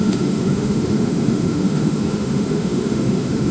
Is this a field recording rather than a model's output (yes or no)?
no